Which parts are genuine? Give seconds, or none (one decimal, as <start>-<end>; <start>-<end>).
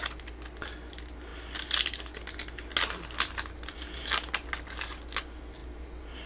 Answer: 0.0-6.3